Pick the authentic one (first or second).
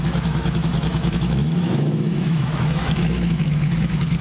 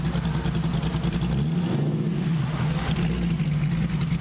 second